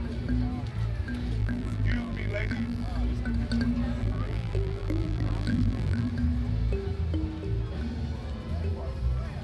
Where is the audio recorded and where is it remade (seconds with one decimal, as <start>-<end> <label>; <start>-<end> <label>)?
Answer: 0.0-1.4 recorded; 1.4-2.9 remade; 2.9-4.0 recorded; 4.0-6.1 remade; 6.1-9.4 recorded